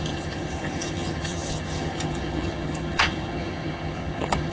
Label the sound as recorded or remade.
remade